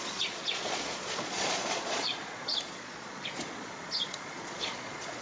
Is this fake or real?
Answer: fake